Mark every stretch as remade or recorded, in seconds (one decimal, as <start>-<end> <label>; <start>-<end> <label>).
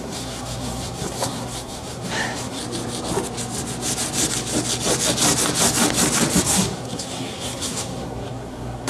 0.0-2.6 remade; 2.6-6.4 recorded; 6.4-8.9 remade